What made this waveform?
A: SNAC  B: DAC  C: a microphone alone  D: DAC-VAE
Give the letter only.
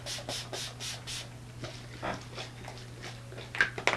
C